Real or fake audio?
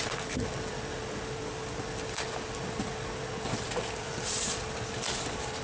real